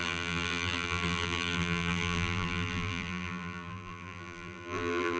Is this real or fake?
fake